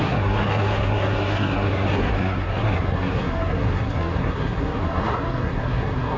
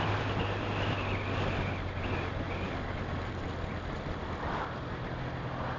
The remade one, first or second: first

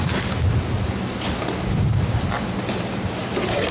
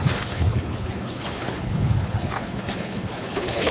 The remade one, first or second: second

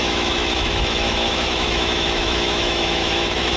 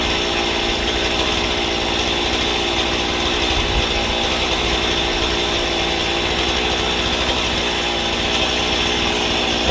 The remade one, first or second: first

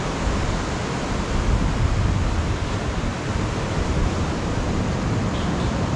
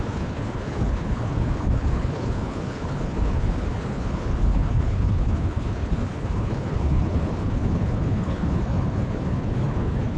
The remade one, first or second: second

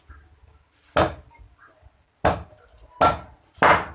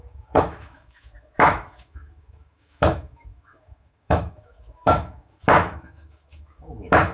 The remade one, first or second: second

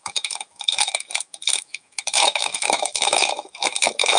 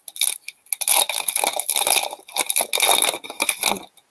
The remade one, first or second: first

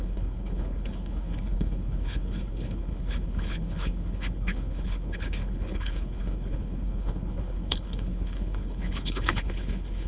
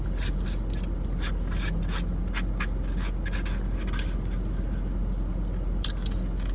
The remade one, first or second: first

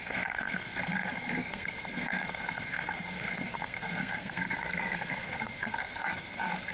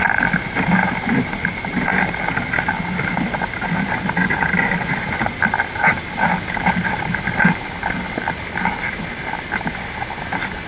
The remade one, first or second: first